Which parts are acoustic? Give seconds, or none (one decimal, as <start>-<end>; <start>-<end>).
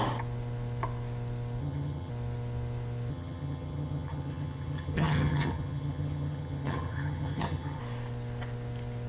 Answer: 0.0-1.6; 2.1-3.1; 7.8-9.1